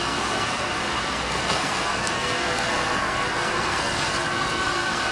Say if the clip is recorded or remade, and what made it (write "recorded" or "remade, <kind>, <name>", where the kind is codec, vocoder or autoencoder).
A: remade, codec, SNAC